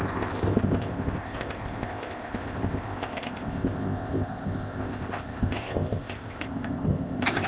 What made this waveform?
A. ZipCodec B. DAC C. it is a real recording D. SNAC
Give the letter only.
A